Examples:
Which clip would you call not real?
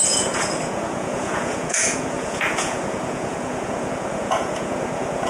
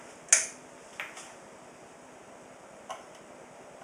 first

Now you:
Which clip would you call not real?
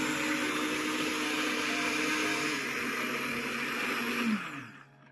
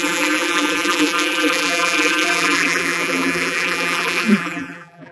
second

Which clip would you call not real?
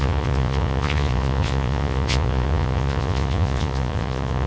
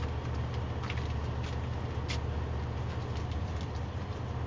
first